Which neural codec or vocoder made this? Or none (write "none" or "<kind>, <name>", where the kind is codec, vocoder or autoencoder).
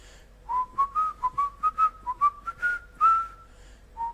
vocoder, BigVGAN v2